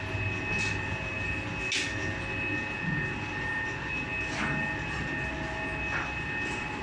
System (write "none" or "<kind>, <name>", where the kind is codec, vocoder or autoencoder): none